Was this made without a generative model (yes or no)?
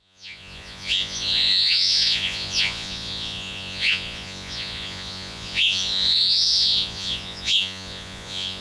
no